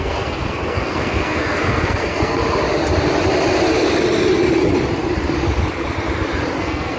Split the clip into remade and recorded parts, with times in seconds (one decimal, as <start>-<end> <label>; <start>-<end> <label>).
0.0-2.4 remade; 2.4-6.6 recorded; 6.6-7.0 remade